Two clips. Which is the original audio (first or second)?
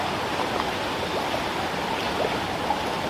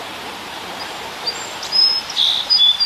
first